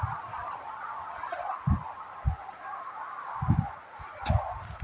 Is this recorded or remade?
recorded